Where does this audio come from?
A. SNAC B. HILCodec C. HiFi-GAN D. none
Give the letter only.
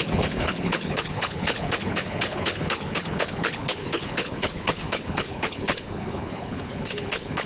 B